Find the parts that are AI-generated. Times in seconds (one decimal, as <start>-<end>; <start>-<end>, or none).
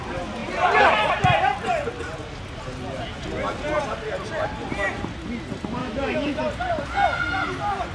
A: 5.8-6.4